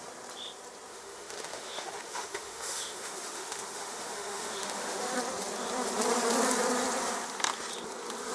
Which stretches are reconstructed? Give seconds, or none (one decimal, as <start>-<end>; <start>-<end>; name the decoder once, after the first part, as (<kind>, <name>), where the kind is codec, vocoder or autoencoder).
0.9-5.1 (autoencoder, DAC-VAE)